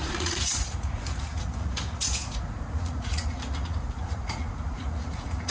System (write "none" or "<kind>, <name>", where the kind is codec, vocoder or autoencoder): vocoder, Vocos